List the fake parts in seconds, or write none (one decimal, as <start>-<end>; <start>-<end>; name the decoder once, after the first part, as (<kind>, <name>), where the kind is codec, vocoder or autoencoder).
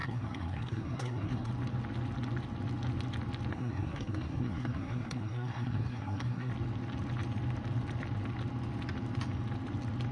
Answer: 0.0-1.5 (codec, SNAC); 3.5-6.5